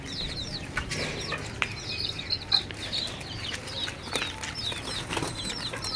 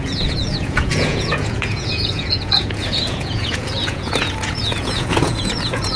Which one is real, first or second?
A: first